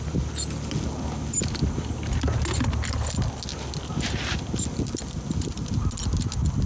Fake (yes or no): no